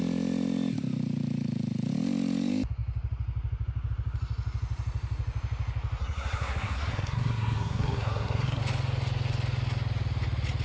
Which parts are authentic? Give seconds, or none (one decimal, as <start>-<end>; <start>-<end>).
0.0-6.0; 8.6-10.6